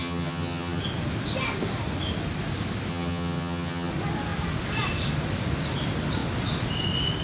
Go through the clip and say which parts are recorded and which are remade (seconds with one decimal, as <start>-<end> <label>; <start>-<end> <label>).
0.0-0.8 remade; 0.8-2.9 recorded; 2.9-3.9 remade; 3.9-7.2 recorded